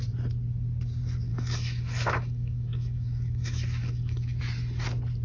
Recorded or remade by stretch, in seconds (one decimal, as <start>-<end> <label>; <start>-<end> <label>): 0.0-1.3 recorded; 1.3-4.4 remade; 4.4-5.2 recorded